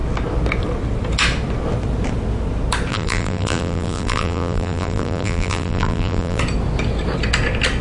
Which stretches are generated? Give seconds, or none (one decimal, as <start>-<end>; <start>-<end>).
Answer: 2.9-6.4